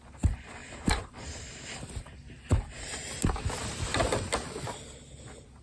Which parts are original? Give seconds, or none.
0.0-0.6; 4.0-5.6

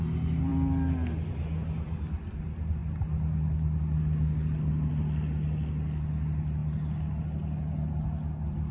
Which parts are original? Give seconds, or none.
0.0-8.7

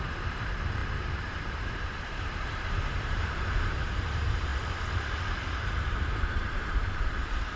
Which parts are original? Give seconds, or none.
4.5-5.7

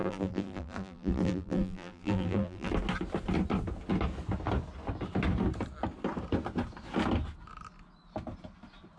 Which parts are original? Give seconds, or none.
2.7-9.0

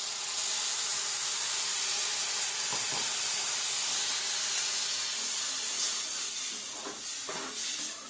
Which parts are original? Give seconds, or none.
0.0-0.7; 2.1-2.7; 3.6-8.1

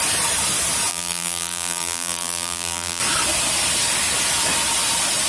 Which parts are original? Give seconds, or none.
0.0-0.9; 3.0-5.3

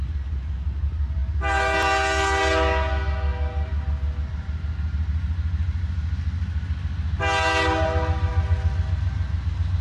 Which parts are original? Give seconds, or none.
0.0-9.8